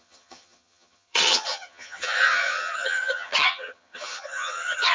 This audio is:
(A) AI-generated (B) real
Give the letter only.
A